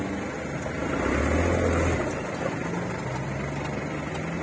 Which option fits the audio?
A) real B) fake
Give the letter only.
A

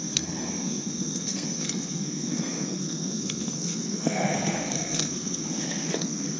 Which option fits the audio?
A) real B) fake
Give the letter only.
B